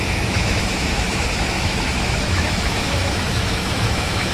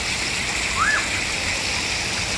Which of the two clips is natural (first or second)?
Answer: second